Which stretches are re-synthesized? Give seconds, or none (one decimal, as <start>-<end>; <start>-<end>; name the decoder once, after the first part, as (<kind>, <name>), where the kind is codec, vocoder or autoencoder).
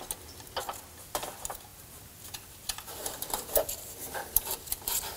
1.7-4.8 (vocoder, BigVGAN v2)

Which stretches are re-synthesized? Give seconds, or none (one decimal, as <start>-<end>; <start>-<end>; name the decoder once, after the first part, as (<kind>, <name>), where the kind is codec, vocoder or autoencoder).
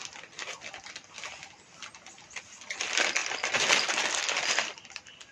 none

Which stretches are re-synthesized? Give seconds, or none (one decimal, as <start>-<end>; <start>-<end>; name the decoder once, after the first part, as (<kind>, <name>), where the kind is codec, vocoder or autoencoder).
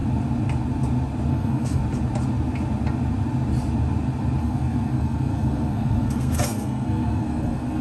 1.3-1.8 (codec, SNAC); 4.4-7.8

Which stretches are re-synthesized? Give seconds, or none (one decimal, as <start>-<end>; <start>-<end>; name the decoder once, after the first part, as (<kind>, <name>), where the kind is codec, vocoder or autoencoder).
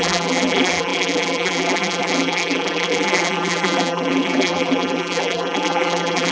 0.0-6.3 (vocoder, BigVGAN v2)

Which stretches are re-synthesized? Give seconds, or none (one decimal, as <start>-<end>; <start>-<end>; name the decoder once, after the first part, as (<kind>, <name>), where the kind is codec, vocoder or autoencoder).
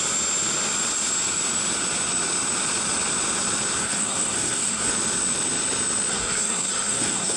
3.8-4.9 (codec, SNAC); 6.1-7.4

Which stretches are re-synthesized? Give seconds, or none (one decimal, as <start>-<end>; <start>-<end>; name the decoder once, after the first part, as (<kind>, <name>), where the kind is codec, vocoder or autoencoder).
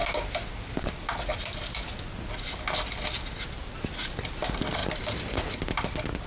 4.8-5.6 (vocoder, BigVGAN v2)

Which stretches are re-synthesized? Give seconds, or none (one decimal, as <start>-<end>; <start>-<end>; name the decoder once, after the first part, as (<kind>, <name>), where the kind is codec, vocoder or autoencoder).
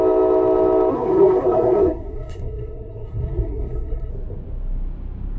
0.9-4.1 (codec, SNAC)